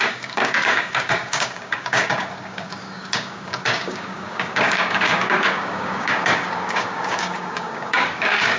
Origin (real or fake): fake